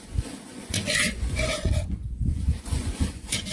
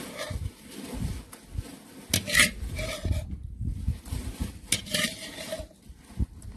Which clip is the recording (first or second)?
second